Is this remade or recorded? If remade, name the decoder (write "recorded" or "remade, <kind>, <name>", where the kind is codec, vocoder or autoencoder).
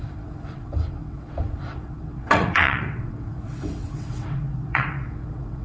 remade, vocoder, WaveNeXt